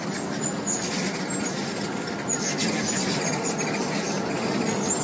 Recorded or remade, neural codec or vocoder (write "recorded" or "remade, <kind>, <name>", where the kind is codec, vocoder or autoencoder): recorded